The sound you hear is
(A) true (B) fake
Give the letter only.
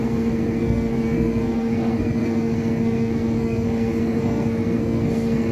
B